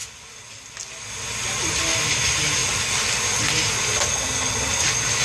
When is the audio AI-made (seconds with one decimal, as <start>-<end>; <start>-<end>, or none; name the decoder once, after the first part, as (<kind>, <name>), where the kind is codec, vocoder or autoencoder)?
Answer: none